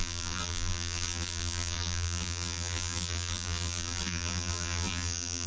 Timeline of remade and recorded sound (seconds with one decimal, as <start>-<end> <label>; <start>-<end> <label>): 0.0-5.5 remade